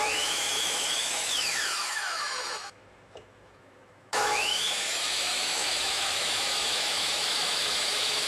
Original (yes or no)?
no